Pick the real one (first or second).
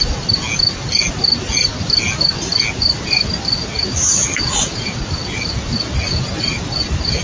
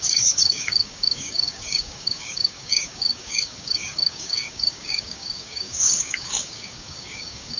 first